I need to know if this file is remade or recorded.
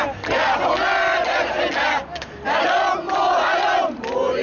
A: recorded